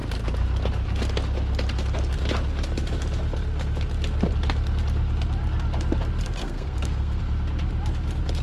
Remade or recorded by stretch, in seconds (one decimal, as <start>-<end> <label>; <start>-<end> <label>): 0.0-6.4 recorded; 6.4-7.2 remade; 7.2-8.4 recorded